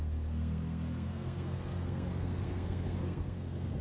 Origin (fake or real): fake